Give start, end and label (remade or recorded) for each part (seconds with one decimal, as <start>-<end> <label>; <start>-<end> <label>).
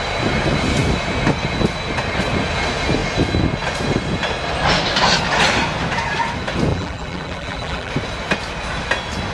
0.0-6.7 recorded; 6.7-7.9 remade; 7.9-9.3 recorded